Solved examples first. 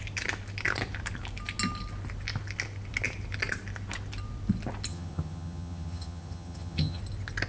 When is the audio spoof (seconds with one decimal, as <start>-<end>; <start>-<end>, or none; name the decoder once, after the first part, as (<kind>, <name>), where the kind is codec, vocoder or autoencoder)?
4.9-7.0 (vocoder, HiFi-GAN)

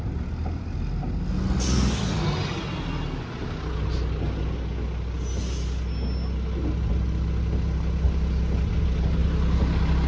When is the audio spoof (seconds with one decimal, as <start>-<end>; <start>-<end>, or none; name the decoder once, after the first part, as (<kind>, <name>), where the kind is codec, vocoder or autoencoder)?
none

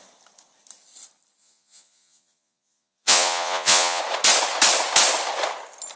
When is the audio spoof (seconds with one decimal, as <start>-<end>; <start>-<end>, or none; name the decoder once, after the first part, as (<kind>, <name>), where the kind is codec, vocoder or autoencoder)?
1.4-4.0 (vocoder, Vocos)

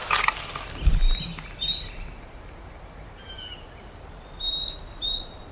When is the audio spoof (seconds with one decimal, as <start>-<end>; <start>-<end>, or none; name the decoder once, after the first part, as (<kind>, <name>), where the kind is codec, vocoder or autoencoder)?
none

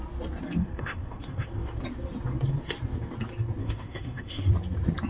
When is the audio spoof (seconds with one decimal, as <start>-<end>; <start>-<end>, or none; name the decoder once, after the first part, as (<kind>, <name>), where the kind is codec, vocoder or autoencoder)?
0.6-1.5 (codec, SNAC); 3.6-4.5

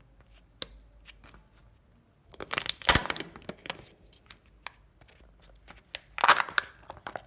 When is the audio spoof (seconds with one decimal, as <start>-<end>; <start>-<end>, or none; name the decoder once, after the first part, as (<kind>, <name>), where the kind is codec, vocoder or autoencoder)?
none

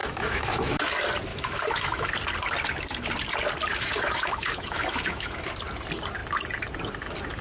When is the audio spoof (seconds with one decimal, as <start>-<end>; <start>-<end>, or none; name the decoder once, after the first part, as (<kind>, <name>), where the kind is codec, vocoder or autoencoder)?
0.0-0.9 (autoencoder, DAC-VAE); 1.3-2.1; 3.7-5.5

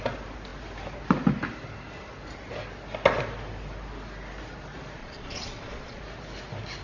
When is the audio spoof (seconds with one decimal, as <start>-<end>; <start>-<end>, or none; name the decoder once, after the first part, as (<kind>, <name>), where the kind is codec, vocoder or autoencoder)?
5.0-6.0 (vocoder, Vocos)